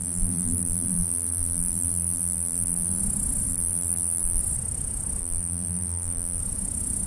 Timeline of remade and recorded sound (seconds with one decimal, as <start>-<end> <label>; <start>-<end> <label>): 0.0-3.0 remade; 3.0-3.5 recorded; 3.5-4.4 remade; 4.4-5.2 recorded; 5.2-6.4 remade; 6.4-7.1 recorded